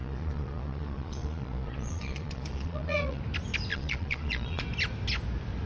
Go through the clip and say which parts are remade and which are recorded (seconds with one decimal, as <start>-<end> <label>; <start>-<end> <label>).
0.0-3.2 remade; 3.2-3.7 recorded; 3.7-4.6 remade; 4.6-5.7 recorded